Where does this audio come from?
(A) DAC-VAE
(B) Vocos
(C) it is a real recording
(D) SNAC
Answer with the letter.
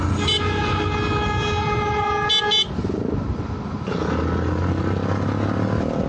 C